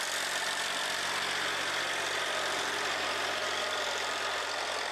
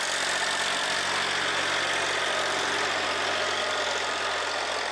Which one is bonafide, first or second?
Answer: second